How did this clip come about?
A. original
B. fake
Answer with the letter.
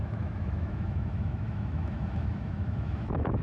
B